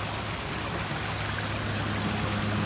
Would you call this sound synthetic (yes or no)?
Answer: no